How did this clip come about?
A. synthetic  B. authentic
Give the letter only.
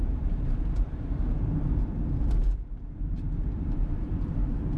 A